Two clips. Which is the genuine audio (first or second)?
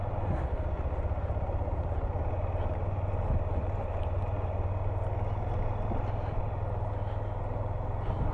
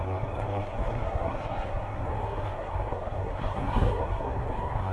first